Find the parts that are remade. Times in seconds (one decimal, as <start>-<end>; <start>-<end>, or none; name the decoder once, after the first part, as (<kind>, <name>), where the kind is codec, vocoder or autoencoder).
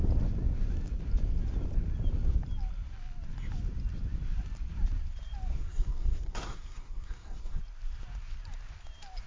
5.5-7.6 (codec, SNAC)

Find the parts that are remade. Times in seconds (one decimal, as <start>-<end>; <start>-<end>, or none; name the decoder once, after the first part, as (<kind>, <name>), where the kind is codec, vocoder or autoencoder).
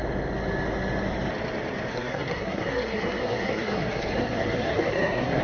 1.9-5.4 (codec, SNAC)